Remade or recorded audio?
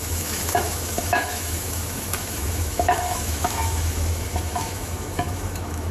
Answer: remade